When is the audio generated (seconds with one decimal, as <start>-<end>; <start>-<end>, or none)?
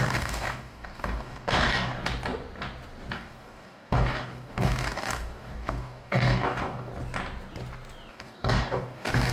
0.0-2.0; 3.1-6.9; 8.1-9.3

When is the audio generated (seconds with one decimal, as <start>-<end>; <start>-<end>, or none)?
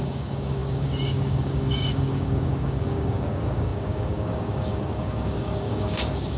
0.0-6.4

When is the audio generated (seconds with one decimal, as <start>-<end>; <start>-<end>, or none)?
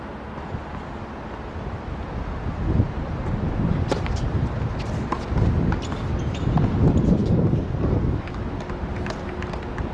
7.2-8.4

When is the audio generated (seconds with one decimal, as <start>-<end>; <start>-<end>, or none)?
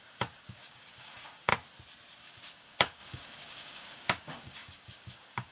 0.0-1.5; 2.2-5.5